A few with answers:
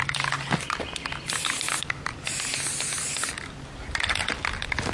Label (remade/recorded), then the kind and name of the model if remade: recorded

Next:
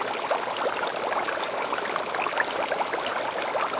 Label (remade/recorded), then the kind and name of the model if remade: recorded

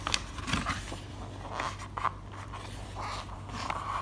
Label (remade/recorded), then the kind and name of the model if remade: recorded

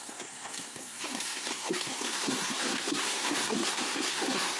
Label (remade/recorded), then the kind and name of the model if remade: remade, codec, SNAC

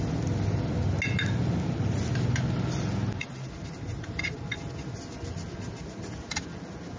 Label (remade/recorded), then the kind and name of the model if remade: recorded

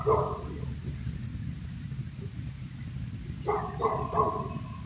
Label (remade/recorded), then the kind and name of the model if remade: recorded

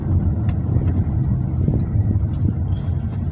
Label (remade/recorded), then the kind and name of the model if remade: recorded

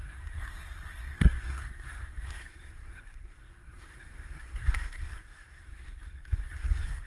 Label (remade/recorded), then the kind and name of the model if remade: remade, codec, SNAC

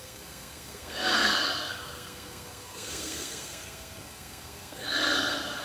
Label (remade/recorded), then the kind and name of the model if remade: remade, codec, SNAC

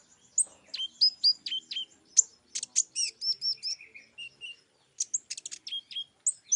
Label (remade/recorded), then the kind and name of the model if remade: recorded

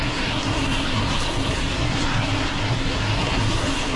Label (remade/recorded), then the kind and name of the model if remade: remade, codec, SNAC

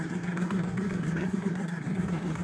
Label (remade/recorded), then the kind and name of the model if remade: remade, codec, SNAC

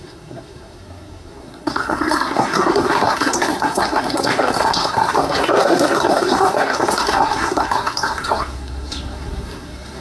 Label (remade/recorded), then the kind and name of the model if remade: remade, codec, SNAC